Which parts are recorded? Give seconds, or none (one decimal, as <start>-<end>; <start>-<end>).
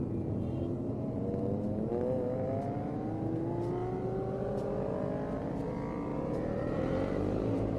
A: 0.0-6.1